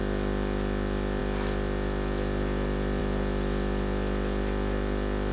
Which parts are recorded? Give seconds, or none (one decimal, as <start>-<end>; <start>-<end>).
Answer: 0.0-5.3